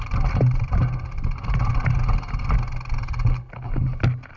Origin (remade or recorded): recorded